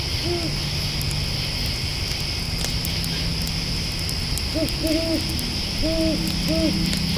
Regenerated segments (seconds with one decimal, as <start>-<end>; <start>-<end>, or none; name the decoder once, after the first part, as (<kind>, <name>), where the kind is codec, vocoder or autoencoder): none